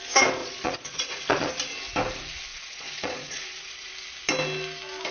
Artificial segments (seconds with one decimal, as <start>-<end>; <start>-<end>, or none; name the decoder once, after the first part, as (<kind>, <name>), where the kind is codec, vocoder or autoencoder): 0.4-1.5 (vocoder, Vocos); 2.5-3.9